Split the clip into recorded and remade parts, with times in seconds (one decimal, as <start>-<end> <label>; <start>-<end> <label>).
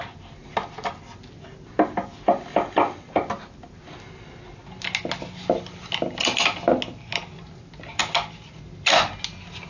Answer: 0.0-9.7 recorded